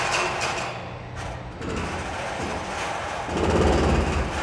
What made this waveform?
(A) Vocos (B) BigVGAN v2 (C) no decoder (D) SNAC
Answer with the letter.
C